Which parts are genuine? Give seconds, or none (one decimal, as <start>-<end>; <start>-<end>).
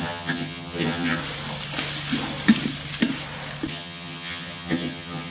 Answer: 1.2-3.7